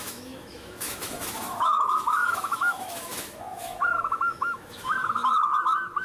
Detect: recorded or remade remade